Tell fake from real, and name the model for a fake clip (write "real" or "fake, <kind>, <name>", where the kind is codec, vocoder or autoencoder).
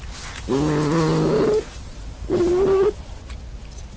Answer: real